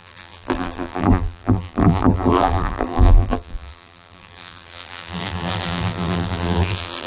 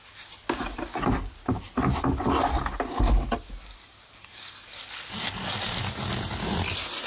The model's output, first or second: first